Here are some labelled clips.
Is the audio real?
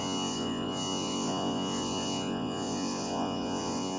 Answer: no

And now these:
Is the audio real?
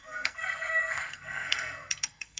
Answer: no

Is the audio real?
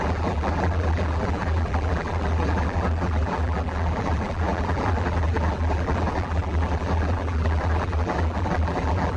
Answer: no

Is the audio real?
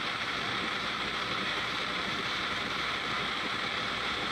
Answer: no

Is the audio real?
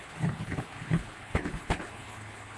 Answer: no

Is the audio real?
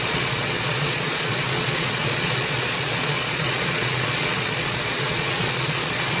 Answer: no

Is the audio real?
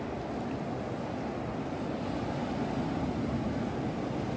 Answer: yes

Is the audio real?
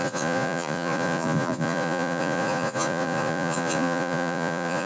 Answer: no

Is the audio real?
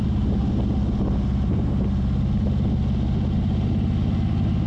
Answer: yes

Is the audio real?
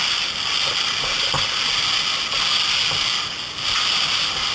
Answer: yes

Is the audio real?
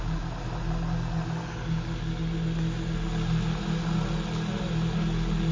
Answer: yes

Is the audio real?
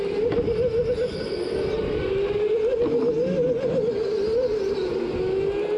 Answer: yes